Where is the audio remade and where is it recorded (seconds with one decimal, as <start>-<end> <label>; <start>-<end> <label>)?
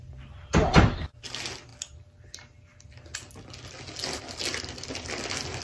0.0-5.6 recorded